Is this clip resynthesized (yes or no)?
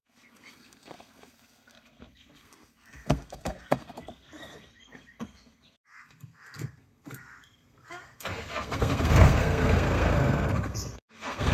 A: yes